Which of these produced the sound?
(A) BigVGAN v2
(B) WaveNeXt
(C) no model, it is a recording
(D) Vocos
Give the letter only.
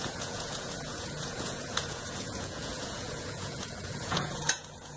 D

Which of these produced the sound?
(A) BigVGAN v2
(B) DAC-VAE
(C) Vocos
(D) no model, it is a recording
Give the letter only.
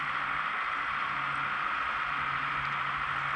D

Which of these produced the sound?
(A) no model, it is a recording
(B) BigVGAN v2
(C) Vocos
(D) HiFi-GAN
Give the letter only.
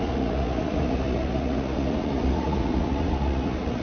C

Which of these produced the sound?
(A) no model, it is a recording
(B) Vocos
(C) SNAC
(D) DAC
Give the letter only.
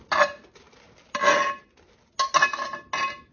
A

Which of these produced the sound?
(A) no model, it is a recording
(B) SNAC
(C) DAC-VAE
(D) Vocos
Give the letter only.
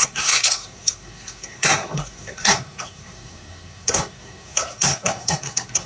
B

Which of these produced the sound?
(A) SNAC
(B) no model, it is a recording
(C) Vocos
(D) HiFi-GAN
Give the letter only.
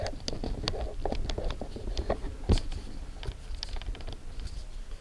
B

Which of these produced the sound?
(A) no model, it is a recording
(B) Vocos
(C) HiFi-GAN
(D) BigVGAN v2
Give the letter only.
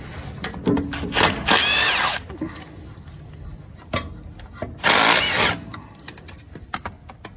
A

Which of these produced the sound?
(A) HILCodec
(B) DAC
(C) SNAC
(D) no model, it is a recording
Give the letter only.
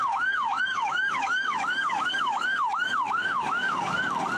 B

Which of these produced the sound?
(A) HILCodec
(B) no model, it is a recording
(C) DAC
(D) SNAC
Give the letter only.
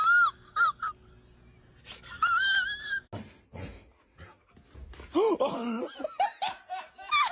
B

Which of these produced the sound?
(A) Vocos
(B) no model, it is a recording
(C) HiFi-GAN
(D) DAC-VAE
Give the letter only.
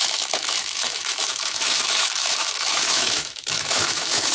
D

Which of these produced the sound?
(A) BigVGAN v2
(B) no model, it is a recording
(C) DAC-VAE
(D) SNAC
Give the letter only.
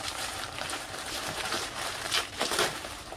A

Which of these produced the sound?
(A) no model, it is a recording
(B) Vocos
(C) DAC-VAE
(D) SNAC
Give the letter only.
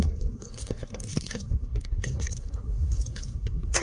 D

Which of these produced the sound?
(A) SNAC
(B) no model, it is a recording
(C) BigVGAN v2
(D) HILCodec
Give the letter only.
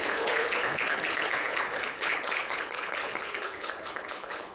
D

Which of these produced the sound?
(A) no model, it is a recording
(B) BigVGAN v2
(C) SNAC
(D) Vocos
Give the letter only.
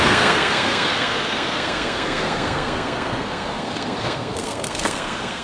C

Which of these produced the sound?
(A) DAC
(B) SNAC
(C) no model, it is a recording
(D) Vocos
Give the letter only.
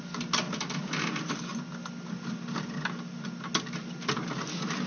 C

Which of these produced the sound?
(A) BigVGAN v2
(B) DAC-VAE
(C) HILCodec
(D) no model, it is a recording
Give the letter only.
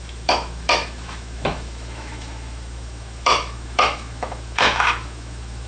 B